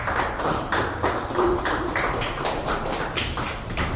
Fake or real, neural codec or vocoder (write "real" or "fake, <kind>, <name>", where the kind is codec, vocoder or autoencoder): fake, vocoder, BigVGAN v2